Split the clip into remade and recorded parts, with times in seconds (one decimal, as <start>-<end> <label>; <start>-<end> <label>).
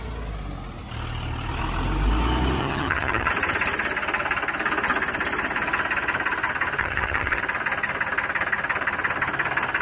0.0-2.6 recorded; 2.6-3.3 remade; 3.3-6.8 recorded; 6.8-7.4 remade; 7.4-9.8 recorded